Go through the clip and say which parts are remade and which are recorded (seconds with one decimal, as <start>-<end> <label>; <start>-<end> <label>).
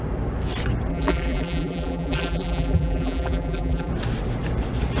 0.0-0.9 recorded; 0.9-3.9 remade; 3.9-5.0 recorded